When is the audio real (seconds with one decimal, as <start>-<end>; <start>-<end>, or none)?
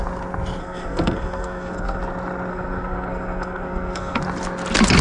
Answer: 0.0-0.6; 2.0-2.5; 4.2-5.0